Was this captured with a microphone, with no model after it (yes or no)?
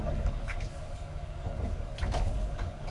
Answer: no